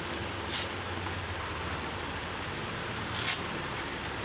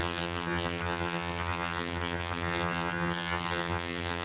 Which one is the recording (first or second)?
first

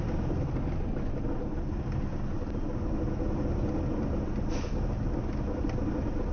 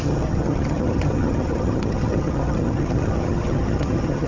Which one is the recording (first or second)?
first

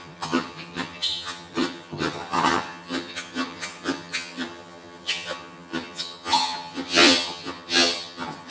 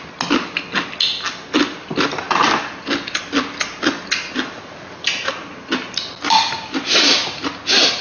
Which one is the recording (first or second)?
second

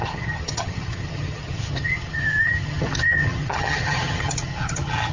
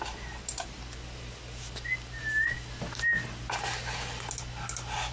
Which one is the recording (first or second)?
second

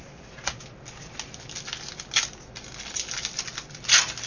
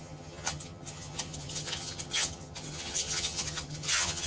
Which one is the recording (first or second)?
first